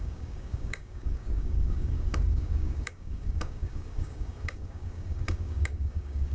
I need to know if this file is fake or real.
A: fake